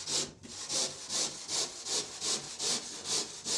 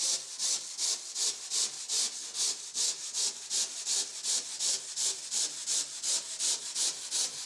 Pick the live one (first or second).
second